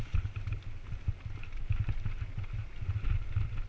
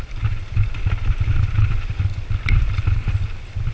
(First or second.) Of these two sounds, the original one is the first